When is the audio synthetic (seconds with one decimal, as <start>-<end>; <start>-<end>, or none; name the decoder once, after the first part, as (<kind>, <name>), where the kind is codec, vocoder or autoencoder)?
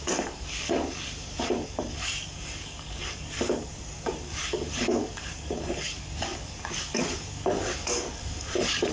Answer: 0.0-8.9 (codec, DAC)